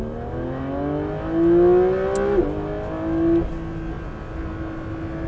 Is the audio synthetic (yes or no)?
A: no